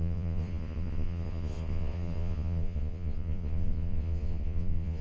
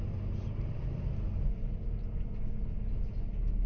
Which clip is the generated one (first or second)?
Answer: first